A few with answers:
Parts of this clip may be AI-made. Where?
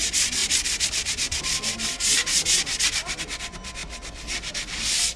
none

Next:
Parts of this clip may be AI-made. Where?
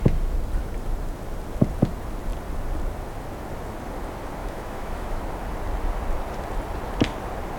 4.4-5.2 (autoencoder, DAC-VAE)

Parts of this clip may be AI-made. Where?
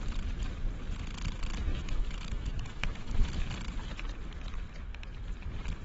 1.7-3.3 (autoencoder, DAC-VAE)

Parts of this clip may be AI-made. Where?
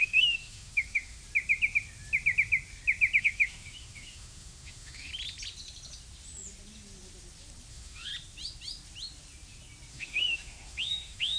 0.0-1.2 (autoencoder, DAC-VAE); 3.2-5.1; 7.7-8.1; 9.9-11.4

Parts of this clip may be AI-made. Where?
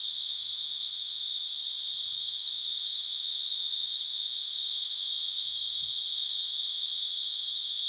0.0-1.5 (autoencoder, DAC-VAE); 2.2-7.9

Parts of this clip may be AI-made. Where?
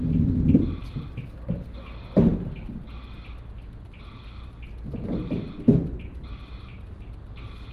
none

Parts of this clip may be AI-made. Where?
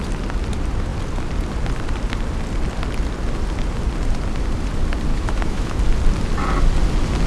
5.1-5.8 (autoencoder, DAC-VAE)